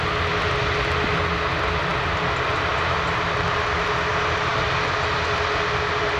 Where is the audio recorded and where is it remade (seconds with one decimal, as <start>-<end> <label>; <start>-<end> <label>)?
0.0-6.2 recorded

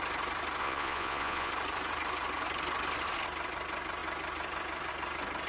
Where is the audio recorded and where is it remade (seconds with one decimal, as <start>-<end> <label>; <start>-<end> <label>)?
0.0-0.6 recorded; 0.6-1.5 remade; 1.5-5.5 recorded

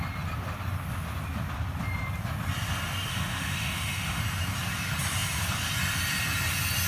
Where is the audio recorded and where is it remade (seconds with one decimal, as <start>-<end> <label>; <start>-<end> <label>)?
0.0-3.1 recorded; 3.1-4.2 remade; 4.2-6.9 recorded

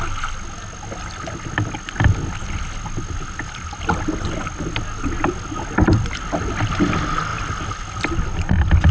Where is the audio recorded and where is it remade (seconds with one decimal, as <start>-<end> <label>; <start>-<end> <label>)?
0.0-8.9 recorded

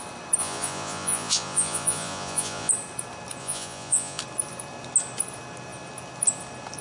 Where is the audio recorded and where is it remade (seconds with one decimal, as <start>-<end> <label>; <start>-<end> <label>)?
0.0-0.4 recorded; 0.4-2.7 remade; 2.7-3.4 recorded; 3.4-4.2 remade; 4.2-6.8 recorded

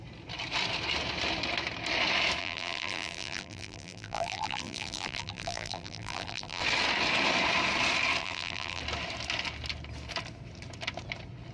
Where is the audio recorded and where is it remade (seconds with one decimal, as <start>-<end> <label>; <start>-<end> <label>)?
0.0-2.4 recorded; 2.4-6.6 remade; 6.6-8.2 recorded; 8.2-8.8 remade; 8.8-11.5 recorded

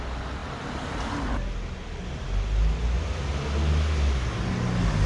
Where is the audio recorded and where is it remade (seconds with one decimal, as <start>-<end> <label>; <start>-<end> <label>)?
0.0-5.1 recorded

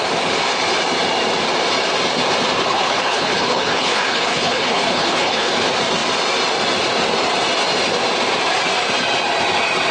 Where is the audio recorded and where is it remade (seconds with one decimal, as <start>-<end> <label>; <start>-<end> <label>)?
0.0-2.6 recorded; 2.6-5.5 remade; 5.5-9.9 recorded